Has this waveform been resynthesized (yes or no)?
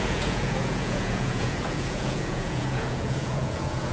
yes